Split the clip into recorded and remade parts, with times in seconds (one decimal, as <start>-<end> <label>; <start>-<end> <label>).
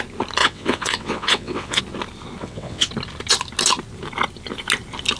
0.0-0.4 recorded; 0.4-1.8 remade; 1.8-2.4 recorded; 2.4-2.9 remade; 2.9-5.2 recorded